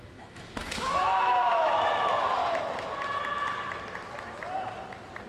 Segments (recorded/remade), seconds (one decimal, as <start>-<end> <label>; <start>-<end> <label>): 0.0-2.4 remade; 2.4-5.3 recorded